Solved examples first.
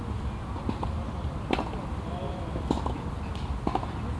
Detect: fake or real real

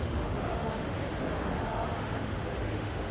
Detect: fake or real fake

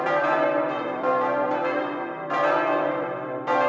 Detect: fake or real fake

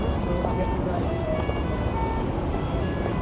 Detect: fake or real real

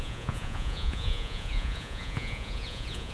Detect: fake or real fake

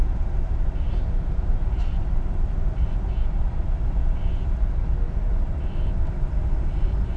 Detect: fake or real real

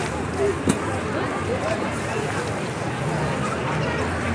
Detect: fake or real real